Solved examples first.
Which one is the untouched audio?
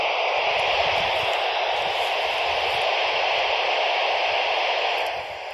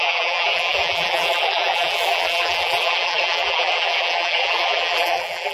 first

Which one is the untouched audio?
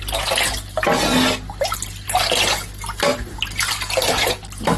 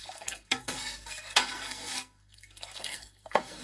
first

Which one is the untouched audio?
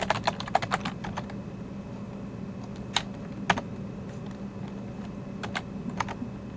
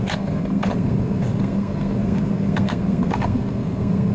first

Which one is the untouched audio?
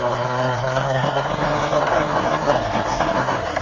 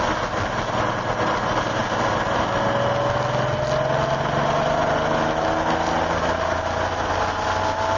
second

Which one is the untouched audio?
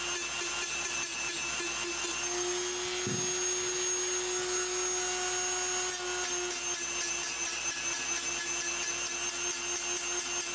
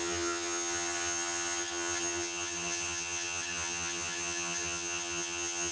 first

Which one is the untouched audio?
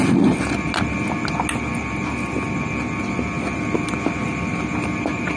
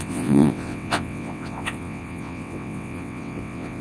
first